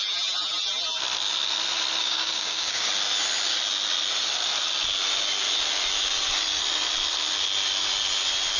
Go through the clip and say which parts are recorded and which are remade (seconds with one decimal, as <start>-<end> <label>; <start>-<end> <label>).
0.0-2.0 recorded; 2.0-2.9 remade; 2.9-8.6 recorded